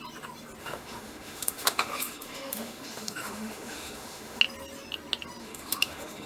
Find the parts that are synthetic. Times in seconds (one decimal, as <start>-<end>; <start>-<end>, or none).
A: 0.6-4.4; 5.4-6.3